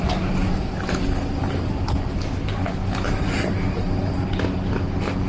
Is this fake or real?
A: real